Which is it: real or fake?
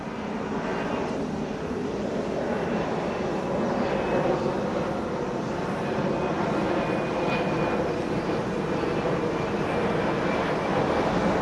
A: real